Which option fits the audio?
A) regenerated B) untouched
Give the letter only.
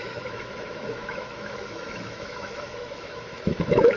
A